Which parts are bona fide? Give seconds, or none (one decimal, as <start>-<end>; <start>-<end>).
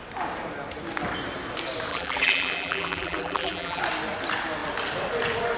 0.0-1.9; 3.8-5.6